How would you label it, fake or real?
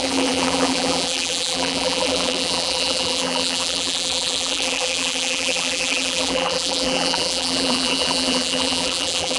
fake